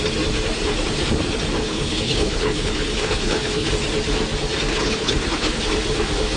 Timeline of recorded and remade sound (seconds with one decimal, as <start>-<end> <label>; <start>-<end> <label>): 0.0-1.6 recorded; 1.6-3.7 remade; 3.7-4.7 recorded; 4.7-5.6 remade; 5.6-6.4 recorded